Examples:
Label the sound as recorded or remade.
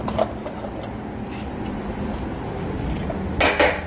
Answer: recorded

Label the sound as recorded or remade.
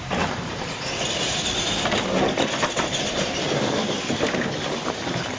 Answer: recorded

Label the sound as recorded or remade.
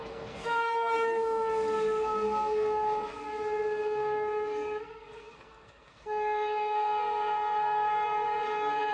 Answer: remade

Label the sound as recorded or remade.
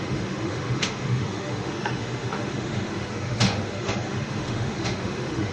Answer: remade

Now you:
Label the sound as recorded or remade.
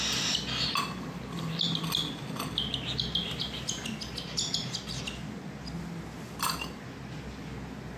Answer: recorded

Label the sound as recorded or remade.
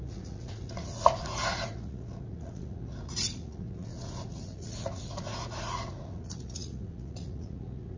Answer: remade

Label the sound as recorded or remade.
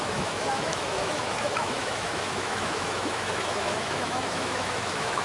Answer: remade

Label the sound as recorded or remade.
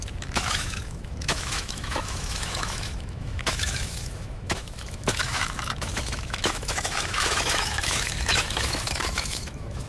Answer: remade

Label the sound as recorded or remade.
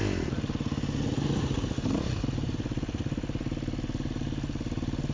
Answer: recorded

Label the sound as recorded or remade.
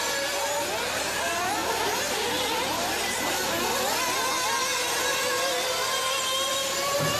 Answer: recorded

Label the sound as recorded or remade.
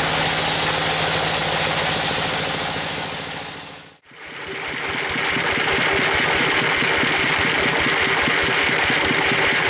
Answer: recorded